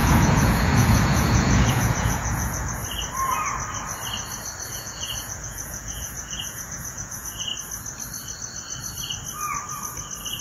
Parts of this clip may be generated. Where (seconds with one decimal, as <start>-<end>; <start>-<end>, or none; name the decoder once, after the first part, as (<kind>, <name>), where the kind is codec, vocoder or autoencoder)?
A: 0.0-2.8 (vocoder, Vocos); 4.7-7.5